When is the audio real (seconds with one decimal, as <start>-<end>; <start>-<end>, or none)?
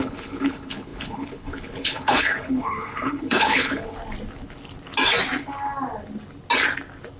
4.0-7.2